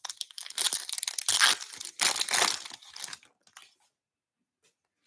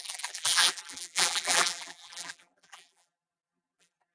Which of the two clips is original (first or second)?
first